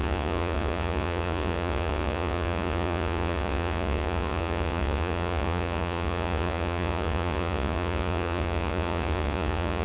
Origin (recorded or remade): remade